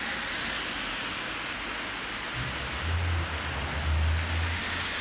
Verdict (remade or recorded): recorded